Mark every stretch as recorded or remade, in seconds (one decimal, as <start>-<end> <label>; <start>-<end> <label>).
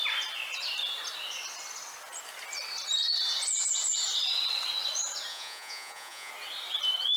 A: 0.0-5.3 recorded; 5.3-6.3 remade; 6.3-7.2 recorded